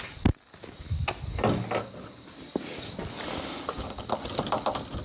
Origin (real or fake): real